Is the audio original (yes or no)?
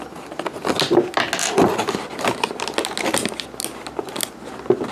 yes